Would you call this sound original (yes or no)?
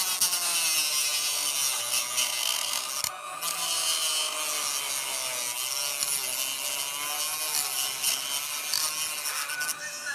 yes